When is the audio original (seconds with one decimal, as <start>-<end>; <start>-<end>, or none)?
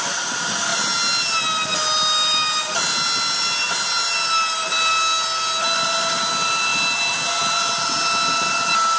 0.0-9.0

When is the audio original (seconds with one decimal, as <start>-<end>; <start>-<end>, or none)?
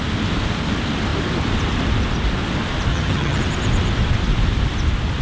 0.0-2.9; 3.4-5.2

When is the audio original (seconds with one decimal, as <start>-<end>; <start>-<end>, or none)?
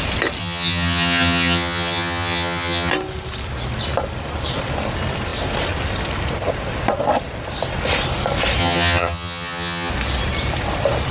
0.0-0.4; 2.9-8.6; 9.9-11.1